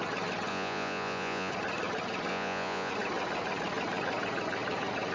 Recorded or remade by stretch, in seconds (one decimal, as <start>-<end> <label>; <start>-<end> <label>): 0.0-0.5 recorded; 0.5-1.5 remade; 1.5-2.3 recorded; 2.3-2.9 remade; 2.9-5.1 recorded